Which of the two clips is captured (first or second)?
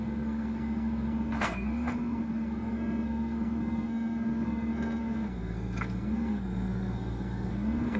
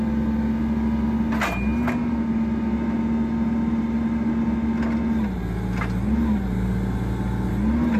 second